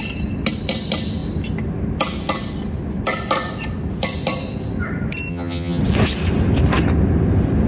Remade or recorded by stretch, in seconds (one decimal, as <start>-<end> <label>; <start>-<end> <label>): 0.0-5.3 recorded; 5.3-5.8 remade; 5.8-7.7 recorded